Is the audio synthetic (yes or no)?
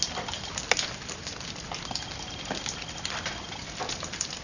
no